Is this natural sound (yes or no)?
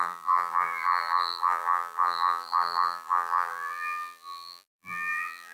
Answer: no